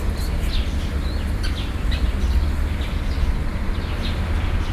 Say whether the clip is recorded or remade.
recorded